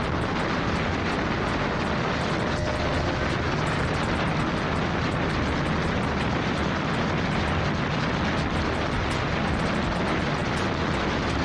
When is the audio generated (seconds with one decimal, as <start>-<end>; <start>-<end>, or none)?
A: none